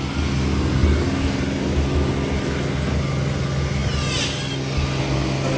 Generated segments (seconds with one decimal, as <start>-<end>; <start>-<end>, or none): none